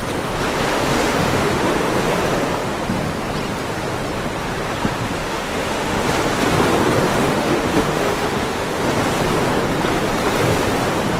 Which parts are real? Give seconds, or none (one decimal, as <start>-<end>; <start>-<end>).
0.0-0.7; 1.6-5.2; 6.0-7.1; 8.8-11.2